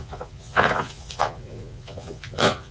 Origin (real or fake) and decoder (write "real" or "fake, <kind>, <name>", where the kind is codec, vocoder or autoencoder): fake, vocoder, Vocos